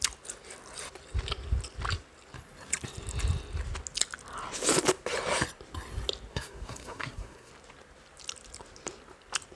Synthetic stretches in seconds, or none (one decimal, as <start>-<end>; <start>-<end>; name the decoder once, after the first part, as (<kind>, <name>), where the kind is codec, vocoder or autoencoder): 6.3-7.5 (codec, SNAC)